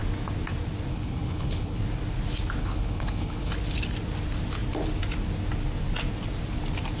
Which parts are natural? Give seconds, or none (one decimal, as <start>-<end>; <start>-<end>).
0.0-0.9; 1.8-2.6; 3.5-7.0